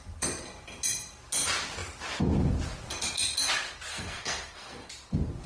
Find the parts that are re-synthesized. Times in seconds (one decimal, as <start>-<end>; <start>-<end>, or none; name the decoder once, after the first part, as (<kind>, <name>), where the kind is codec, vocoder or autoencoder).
3.9-4.9 (codec, SNAC)